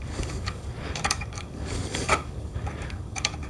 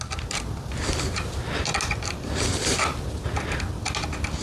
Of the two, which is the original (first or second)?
second